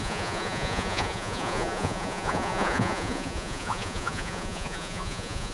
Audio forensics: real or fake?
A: fake